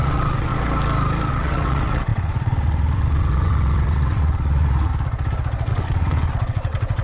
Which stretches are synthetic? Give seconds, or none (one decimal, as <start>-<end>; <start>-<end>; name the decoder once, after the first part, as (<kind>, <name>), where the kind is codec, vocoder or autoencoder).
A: 0.0-0.5 (vocoder, WaveNeXt); 1.3-4.9; 5.7-7.0